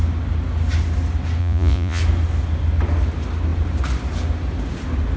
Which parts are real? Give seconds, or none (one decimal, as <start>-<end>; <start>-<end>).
0.0-1.4; 2.0-5.2